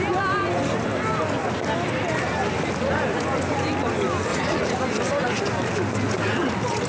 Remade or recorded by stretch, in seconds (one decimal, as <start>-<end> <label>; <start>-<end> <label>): 0.0-4.3 recorded; 4.3-4.8 remade; 4.8-6.9 recorded